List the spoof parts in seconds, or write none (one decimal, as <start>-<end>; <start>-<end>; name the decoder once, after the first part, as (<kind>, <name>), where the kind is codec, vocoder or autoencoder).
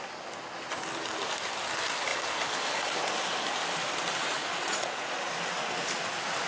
4.4-5.3 (vocoder, Vocos)